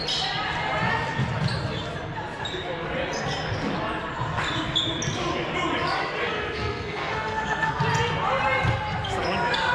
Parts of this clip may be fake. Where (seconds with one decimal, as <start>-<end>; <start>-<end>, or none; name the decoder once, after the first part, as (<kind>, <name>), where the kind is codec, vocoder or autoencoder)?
6.2-7.8 (codec, SNAC)